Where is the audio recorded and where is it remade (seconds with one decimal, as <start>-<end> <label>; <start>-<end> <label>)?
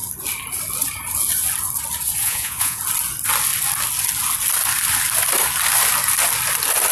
0.0-2.2 recorded; 2.2-2.8 remade; 2.8-6.9 recorded